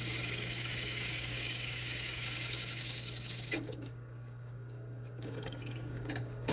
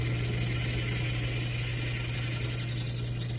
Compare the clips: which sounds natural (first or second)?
second